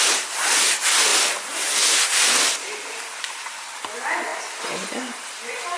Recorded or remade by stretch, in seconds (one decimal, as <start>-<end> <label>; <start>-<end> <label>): 0.0-5.8 recorded